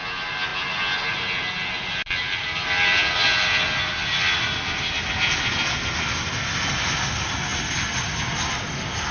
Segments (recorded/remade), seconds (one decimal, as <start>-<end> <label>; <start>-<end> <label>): 0.0-9.1 recorded